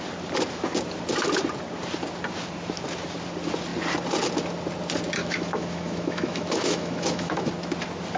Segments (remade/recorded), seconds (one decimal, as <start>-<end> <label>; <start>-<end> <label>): 0.0-5.2 recorded; 5.2-7.5 remade; 7.5-8.2 recorded